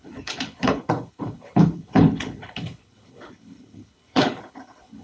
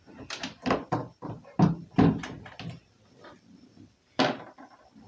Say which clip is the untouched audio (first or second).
second